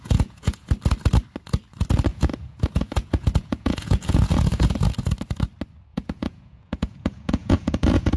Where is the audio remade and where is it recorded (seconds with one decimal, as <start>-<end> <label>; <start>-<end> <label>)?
0.0-0.7 remade; 0.7-2.1 recorded; 2.1-4.8 remade; 4.8-5.9 recorded; 5.9-8.2 remade